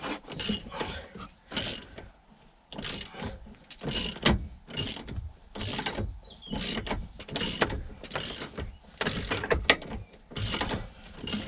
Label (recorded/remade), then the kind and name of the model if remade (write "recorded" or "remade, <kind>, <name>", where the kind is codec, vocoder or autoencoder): recorded